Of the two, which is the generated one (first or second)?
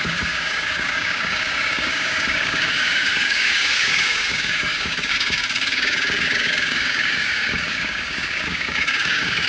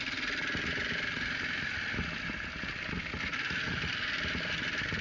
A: first